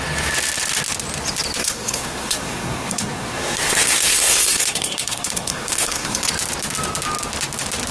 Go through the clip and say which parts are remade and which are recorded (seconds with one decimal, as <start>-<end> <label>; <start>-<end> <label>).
0.0-1.6 recorded; 1.6-6.3 remade; 6.3-7.9 recorded

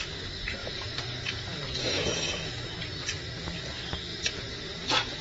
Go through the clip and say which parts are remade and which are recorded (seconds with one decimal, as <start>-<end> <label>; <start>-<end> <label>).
0.0-0.6 recorded; 0.6-2.5 remade; 2.5-4.1 recorded; 4.1-5.2 remade

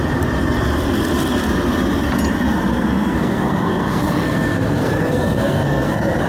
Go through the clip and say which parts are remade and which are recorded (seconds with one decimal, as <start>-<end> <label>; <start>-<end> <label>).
0.0-2.7 recorded; 2.7-6.3 remade

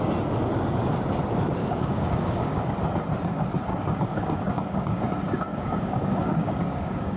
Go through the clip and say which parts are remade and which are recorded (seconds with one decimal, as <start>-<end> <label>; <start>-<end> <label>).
0.0-1.6 recorded; 1.6-2.7 remade; 2.7-3.7 recorded; 3.7-5.0 remade; 5.0-5.5 recorded; 5.5-7.2 remade

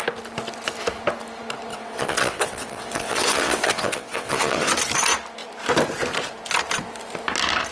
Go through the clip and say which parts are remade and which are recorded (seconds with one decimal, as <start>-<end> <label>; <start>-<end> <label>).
0.0-1.7 recorded; 1.7-4.7 remade; 4.7-7.7 recorded

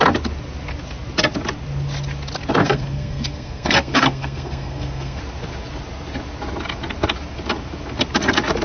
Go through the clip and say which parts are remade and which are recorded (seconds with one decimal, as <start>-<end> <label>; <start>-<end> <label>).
0.0-2.6 recorded; 2.6-5.2 remade; 5.2-8.6 recorded